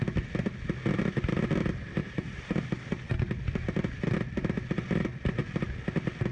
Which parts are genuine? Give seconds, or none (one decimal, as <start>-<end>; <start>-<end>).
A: 0.0-2.0; 2.6-6.3